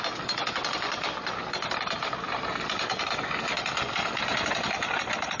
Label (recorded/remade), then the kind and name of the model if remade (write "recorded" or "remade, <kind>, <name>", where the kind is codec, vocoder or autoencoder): recorded